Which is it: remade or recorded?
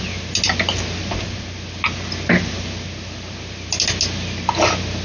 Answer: recorded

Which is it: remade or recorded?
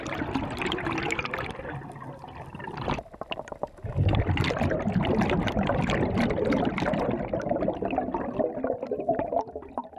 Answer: recorded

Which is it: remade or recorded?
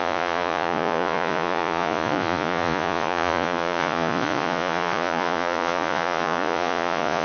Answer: remade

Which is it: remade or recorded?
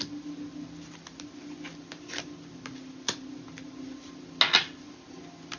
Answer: recorded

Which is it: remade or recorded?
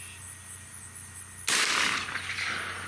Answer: recorded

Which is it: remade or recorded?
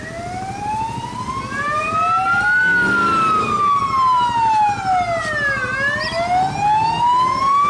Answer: recorded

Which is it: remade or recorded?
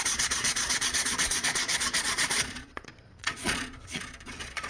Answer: remade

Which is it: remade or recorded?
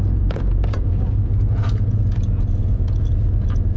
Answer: remade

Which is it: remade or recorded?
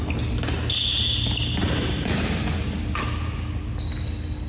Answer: recorded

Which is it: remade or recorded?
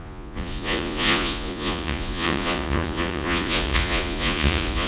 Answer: remade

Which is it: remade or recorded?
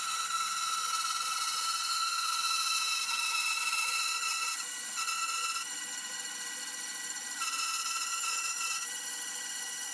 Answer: remade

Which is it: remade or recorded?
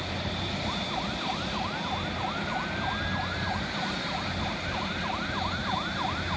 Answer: recorded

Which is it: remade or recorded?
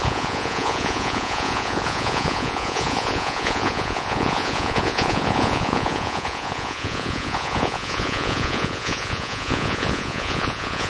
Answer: remade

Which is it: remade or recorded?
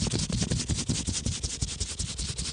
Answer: recorded